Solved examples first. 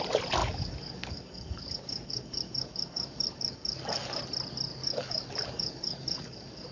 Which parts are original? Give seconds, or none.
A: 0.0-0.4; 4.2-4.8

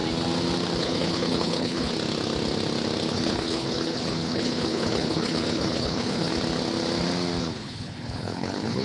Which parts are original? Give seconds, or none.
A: 0.0-0.8; 1.9-3.1; 6.3-7.4

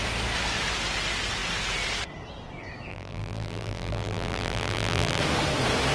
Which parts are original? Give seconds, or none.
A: 0.0-2.9; 5.2-5.9

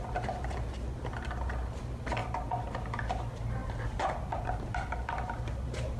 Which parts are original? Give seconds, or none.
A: 0.0-6.0

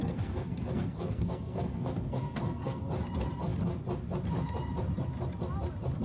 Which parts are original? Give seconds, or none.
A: 2.8-6.0

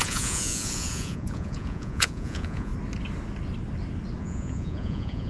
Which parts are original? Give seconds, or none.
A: 2.7-4.2

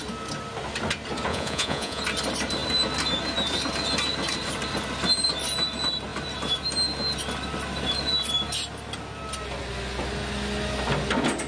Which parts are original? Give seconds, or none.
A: 0.0-1.3; 2.0-11.5